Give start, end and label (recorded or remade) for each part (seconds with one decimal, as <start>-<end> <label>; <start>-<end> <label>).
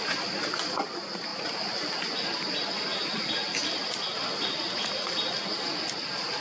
0.0-1.3 recorded; 1.3-1.9 remade; 1.9-6.4 recorded